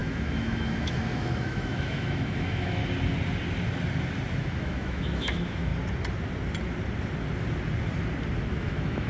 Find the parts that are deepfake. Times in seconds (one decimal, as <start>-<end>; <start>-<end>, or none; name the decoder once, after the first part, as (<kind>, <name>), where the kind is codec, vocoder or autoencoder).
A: 0.0-2.8 (autoencoder, DAC-VAE); 4.4-5.7; 8.5-9.1